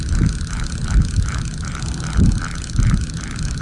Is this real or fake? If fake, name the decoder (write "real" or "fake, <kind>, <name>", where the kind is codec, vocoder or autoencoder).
real